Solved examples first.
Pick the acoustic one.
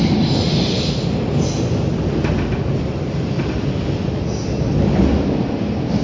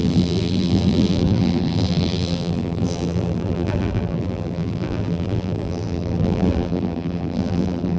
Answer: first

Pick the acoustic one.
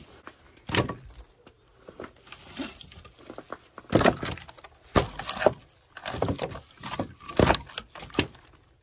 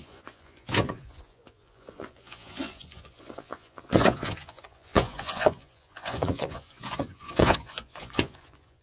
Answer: first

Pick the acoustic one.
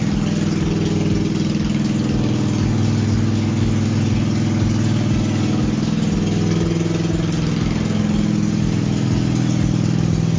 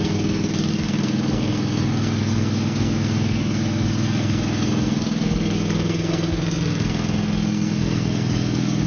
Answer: first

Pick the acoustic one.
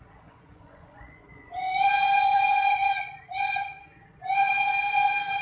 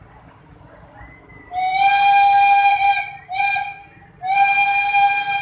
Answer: second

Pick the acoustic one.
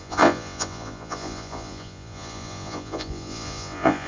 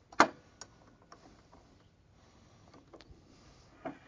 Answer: second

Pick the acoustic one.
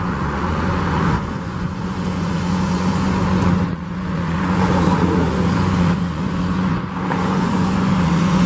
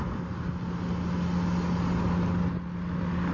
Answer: second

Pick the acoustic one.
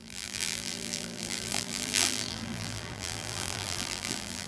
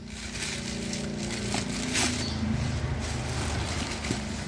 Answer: second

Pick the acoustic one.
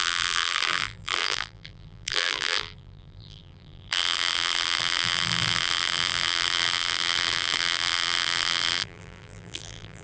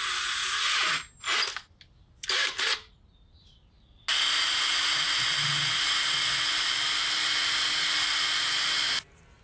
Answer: second